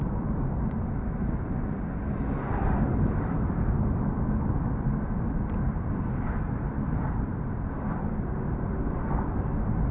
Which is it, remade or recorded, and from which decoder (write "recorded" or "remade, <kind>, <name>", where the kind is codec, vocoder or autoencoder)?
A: remade, vocoder, BigVGAN v2